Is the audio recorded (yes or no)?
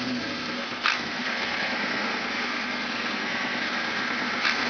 no